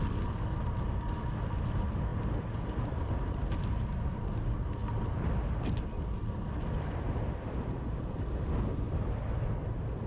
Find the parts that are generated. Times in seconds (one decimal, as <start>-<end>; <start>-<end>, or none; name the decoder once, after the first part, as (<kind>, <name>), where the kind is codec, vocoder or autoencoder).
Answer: none